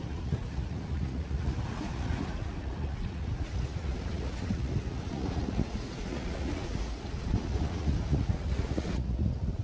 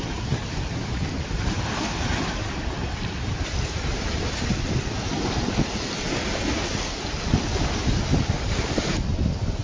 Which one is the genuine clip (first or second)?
second